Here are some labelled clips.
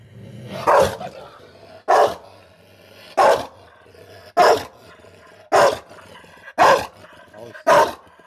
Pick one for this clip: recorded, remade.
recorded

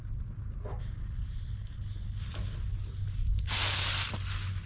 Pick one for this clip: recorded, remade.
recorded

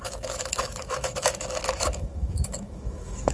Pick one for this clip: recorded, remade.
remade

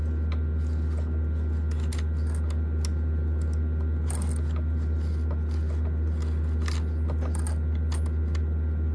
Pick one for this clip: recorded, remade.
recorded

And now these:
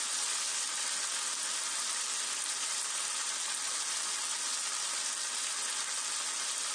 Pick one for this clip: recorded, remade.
recorded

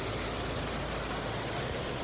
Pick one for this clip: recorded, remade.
recorded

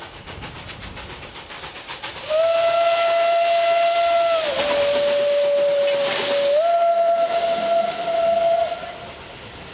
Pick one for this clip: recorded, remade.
recorded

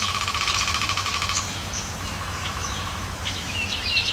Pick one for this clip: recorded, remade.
remade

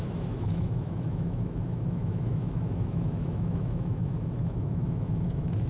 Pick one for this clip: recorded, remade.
remade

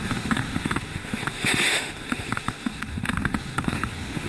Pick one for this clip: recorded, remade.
remade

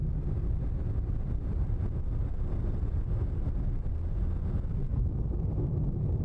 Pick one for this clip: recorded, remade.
recorded